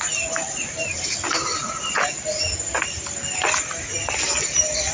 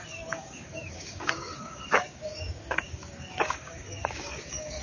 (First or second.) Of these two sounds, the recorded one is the first